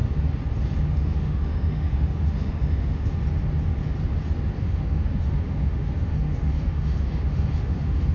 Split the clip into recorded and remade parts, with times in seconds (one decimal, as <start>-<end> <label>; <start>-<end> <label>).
0.0-0.9 recorded; 0.9-3.1 remade; 3.1-4.6 recorded; 4.6-8.1 remade